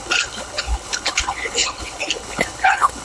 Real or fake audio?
fake